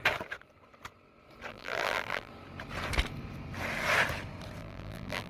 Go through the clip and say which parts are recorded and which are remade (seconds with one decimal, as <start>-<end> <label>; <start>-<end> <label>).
0.0-1.5 recorded; 1.5-2.3 remade; 2.3-4.6 recorded; 4.6-5.3 remade